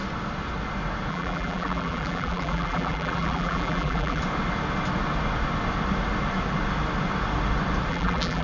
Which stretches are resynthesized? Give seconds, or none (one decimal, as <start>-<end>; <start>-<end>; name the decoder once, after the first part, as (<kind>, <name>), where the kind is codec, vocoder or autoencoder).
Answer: 1.1-4.2 (vocoder, BigVGAN v2); 7.9-8.4